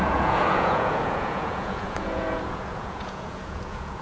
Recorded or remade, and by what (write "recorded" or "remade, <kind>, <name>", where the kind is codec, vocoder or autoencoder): remade, vocoder, Vocos